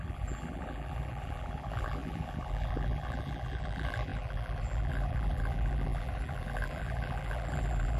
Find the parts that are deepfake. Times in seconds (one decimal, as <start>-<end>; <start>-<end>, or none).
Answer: 0.0-8.0